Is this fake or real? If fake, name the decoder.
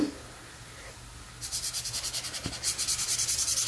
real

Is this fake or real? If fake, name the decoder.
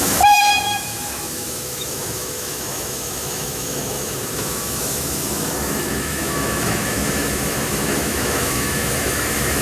fake, autoencoder, DAC-VAE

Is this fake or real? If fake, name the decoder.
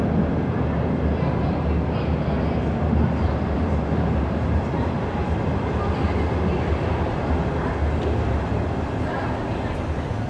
real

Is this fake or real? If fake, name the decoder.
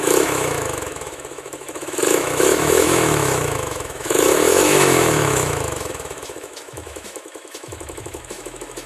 fake, autoencoder, DAC-VAE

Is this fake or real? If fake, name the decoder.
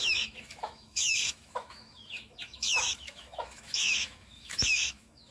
fake, autoencoder, DAC-VAE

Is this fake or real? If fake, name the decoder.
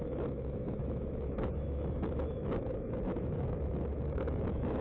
fake, autoencoder, DAC-VAE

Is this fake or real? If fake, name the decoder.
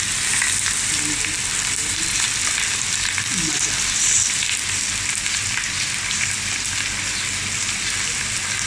real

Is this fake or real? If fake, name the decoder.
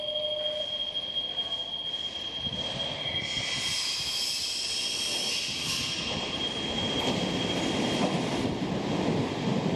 real